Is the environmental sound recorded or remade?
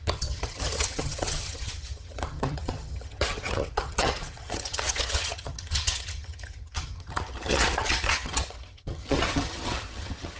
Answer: remade